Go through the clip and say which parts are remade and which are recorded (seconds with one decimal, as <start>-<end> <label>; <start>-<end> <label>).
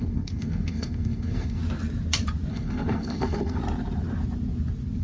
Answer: 0.0-1.6 remade; 1.6-2.5 recorded; 2.5-3.6 remade; 3.6-5.0 recorded